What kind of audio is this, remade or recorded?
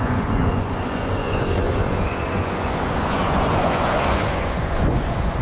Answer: remade